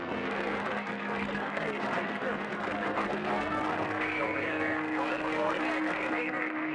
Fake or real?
fake